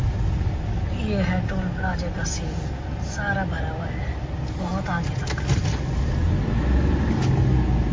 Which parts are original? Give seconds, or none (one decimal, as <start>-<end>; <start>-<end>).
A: 0.0-7.9